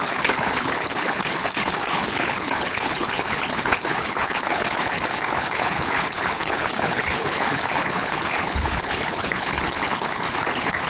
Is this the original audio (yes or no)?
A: no